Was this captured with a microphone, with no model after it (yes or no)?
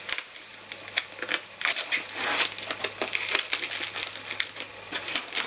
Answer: yes